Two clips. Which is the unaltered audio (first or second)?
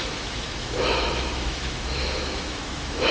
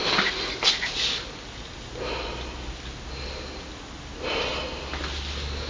second